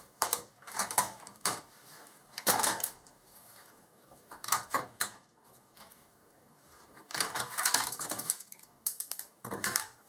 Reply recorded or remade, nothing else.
remade